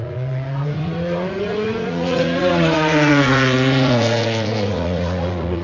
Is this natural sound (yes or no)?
no